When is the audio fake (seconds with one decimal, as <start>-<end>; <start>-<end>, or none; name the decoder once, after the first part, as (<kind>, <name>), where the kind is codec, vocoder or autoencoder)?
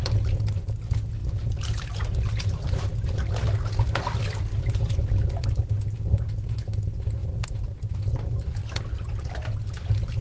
1.2-3.2 (vocoder, BigVGAN v2); 4.5-5.7; 7.2-7.9; 8.6-9.6